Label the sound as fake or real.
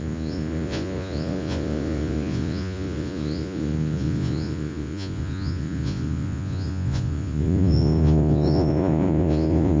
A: fake